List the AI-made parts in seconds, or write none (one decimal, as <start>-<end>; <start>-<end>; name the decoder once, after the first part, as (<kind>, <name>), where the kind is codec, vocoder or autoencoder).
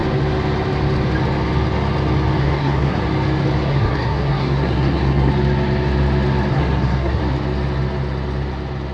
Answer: 2.4-3.0 (codec, SNAC); 3.7-5.3; 6.5-7.2